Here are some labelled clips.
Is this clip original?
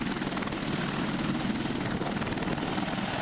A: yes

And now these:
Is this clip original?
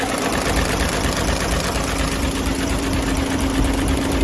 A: no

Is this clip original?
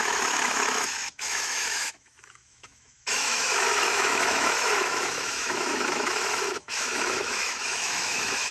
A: no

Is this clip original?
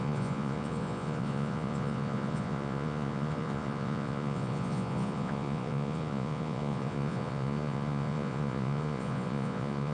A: no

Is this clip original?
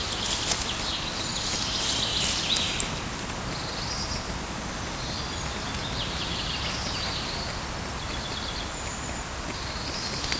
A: yes